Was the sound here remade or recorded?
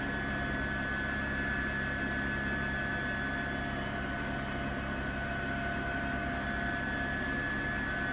recorded